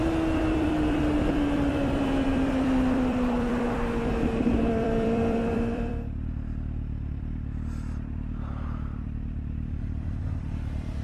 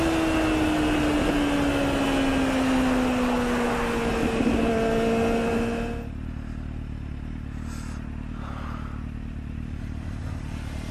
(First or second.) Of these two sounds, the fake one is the first